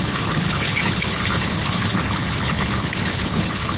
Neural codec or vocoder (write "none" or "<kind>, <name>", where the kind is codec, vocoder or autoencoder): codec, HILCodec